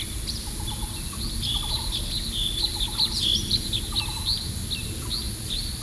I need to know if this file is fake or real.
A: real